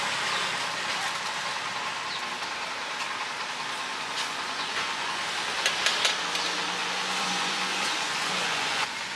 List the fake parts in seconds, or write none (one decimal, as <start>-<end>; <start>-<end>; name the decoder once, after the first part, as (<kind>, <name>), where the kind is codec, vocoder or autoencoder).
3.9-5.2 (vocoder, Vocos); 6.8-9.2